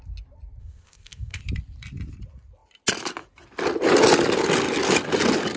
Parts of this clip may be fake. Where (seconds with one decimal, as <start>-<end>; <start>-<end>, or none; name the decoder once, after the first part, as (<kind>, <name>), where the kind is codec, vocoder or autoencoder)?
0.6-1.4 (codec, ZipCodec)